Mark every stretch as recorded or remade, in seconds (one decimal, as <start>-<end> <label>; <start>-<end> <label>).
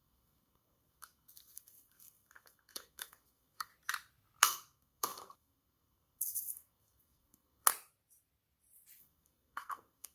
0.0-3.7 remade; 3.7-4.4 recorded; 4.4-7.7 remade; 7.7-9.0 recorded; 9.0-10.1 remade